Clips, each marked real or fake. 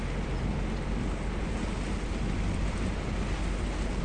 real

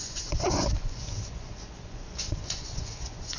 fake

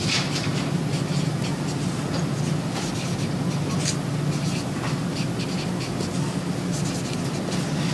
real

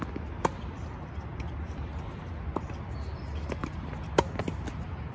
real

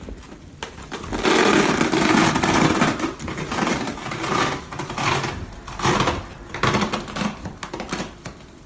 real